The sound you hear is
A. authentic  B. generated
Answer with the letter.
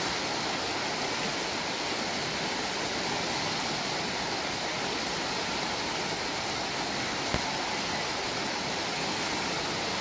A